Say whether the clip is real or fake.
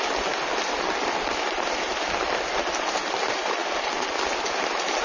real